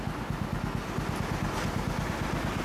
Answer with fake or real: real